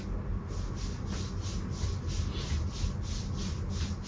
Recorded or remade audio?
recorded